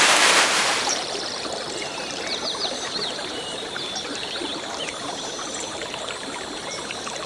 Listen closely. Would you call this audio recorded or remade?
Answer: remade